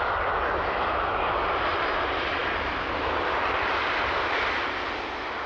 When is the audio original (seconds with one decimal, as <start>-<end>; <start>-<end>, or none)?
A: 0.0-5.5